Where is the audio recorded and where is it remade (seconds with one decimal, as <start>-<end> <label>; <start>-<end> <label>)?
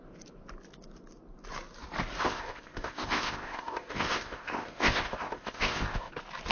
0.0-2.2 recorded; 2.2-6.1 remade; 6.1-6.5 recorded